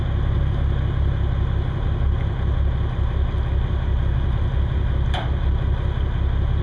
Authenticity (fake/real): real